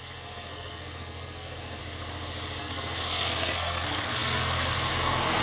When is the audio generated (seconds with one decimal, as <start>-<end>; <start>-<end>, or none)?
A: 0.0-1.8; 2.6-5.4